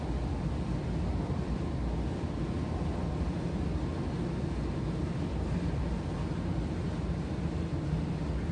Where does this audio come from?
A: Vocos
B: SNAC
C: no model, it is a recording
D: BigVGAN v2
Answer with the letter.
C